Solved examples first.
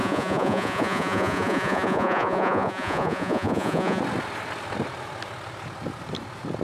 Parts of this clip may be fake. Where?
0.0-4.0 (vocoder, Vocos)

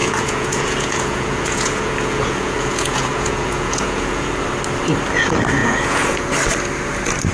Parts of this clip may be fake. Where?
0.0-4.4 (vocoder, Vocos); 5.6-6.3

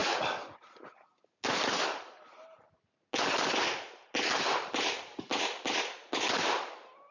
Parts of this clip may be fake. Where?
none

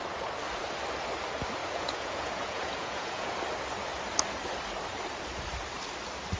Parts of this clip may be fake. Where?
1.6-3.4 (vocoder, Vocos)

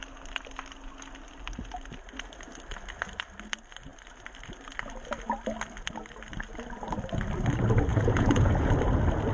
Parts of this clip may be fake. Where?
7.9-8.7 (vocoder, Vocos)

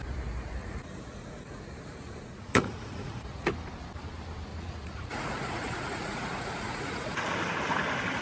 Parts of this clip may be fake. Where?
0.6-3.5 (vocoder, Vocos); 4.5-7.2

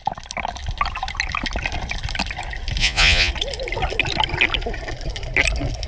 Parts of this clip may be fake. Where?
2.8-3.3 (vocoder, Vocos)